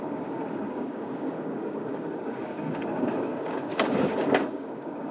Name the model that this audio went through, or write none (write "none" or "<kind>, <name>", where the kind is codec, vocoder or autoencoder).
codec, DAC